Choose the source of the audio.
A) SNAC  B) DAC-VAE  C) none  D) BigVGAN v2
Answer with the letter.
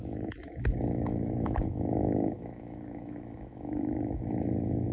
B